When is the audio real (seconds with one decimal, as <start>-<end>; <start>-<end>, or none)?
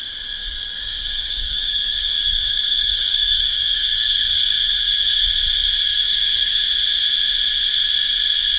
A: 0.0-0.4; 5.3-5.8; 6.6-8.6